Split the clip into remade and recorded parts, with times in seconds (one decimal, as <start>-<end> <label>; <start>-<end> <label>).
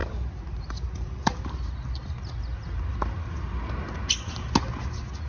0.0-1.5 remade; 1.5-5.3 recorded